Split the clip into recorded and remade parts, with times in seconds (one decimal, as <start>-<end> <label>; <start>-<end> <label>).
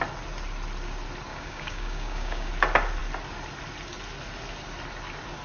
0.0-1.3 recorded; 1.3-2.5 remade; 2.5-5.4 recorded